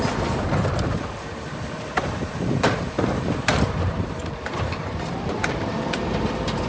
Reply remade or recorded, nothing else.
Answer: remade